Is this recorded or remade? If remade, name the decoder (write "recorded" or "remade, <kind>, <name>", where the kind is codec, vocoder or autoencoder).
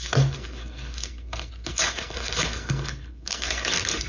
remade, codec, SNAC